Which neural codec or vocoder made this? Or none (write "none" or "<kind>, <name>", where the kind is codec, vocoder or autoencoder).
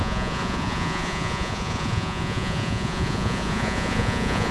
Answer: vocoder, Vocos